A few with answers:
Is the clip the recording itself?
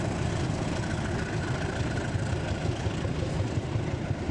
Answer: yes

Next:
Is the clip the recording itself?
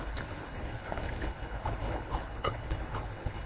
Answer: no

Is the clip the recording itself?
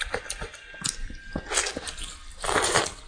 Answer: yes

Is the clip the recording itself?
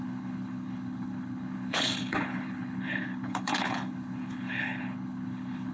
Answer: no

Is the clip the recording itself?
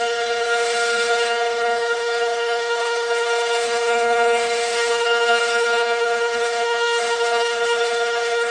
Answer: no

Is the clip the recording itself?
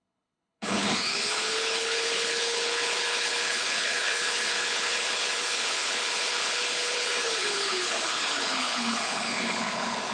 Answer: no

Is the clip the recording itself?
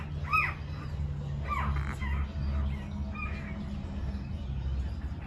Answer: yes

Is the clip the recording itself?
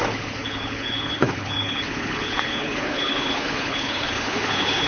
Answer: no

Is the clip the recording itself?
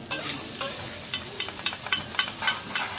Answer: yes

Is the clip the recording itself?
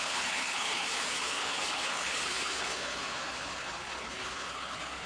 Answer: no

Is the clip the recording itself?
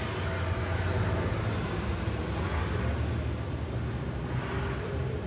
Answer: yes